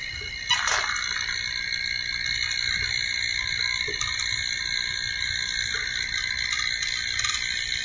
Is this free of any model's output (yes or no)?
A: yes